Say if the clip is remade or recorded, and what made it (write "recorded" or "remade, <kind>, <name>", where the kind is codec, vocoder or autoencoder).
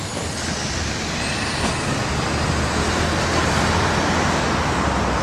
recorded